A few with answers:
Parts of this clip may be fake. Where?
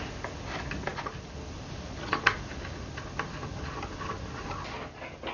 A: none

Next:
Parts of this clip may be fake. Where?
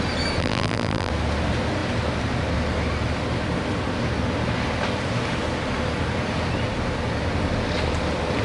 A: 0.4-1.1 (vocoder, BigVGAN v2)